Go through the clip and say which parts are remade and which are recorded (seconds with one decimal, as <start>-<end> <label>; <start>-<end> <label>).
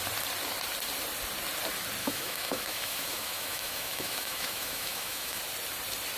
0.0-2.0 recorded; 2.0-5.4 remade; 5.4-6.2 recorded